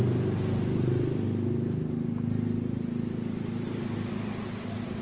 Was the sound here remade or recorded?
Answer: recorded